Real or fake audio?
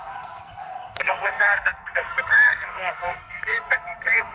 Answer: fake